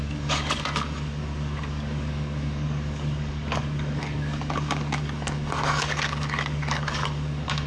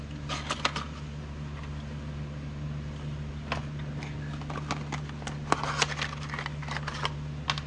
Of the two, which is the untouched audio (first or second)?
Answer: second